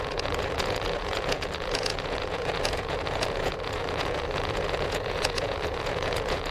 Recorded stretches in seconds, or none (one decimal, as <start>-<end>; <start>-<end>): none